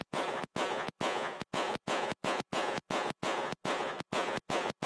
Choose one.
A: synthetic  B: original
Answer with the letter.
A